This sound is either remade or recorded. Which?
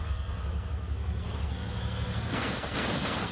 remade